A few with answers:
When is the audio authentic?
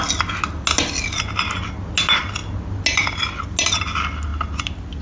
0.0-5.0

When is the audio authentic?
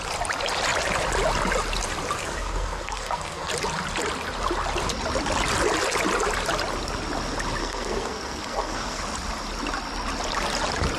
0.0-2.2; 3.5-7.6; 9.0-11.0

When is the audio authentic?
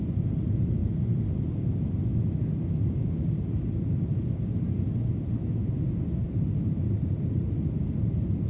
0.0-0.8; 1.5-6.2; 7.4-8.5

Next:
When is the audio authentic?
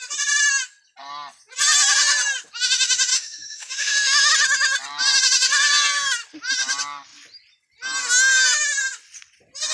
0.0-3.1; 4.3-9.7